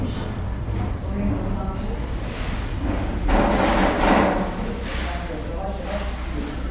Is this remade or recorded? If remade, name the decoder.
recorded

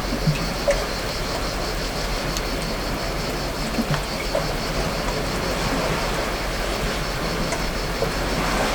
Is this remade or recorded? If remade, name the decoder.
recorded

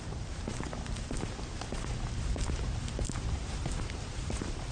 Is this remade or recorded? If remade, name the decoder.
remade, vocoder, BigVGAN v2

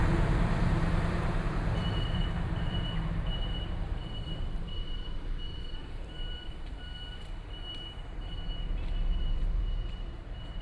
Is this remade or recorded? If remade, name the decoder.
remade, vocoder, BigVGAN v2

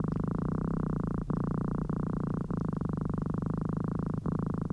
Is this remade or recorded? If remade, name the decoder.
recorded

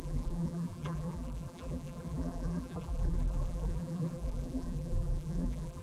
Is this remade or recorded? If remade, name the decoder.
remade, vocoder, BigVGAN v2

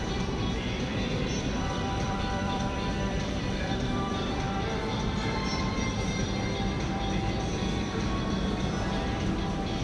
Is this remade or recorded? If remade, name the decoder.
remade, vocoder, BigVGAN v2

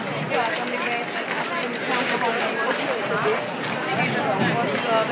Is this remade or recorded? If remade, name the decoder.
recorded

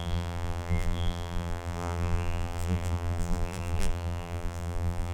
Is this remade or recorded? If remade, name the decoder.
remade, vocoder, BigVGAN v2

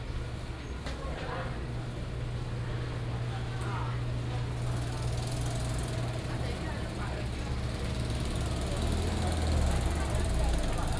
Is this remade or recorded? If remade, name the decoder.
recorded